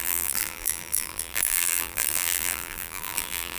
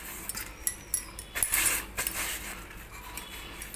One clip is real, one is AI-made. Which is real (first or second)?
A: second